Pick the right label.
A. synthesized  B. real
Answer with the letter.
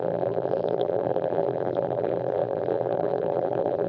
A